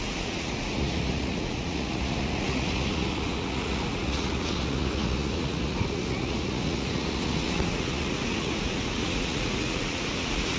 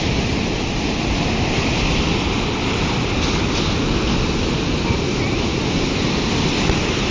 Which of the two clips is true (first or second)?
second